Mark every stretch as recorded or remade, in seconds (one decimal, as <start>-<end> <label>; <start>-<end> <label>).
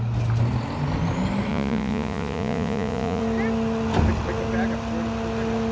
0.0-1.5 recorded; 1.5-3.2 remade; 3.2-5.7 recorded